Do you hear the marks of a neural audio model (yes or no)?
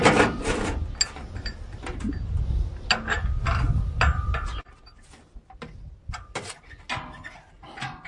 no